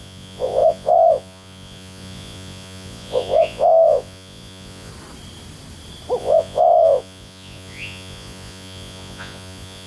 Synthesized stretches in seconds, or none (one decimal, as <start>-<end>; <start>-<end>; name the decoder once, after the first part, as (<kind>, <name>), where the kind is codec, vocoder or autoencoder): 0.0-4.9 (vocoder, Vocos); 6.2-9.9